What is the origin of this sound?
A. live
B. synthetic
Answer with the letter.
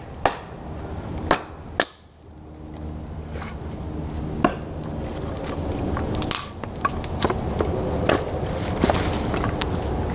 A